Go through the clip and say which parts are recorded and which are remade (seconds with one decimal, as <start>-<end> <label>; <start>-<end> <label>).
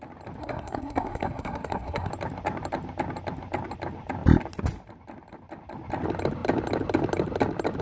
0.0-0.4 recorded; 0.4-2.1 remade; 2.1-7.8 recorded